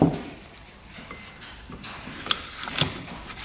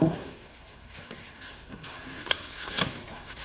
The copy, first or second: second